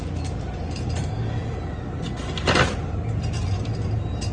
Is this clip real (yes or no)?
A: yes